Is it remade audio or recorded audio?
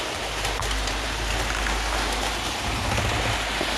recorded